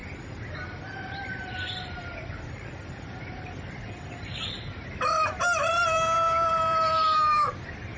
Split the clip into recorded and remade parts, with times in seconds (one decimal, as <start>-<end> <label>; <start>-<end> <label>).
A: 0.0-1.1 recorded; 1.1-8.0 remade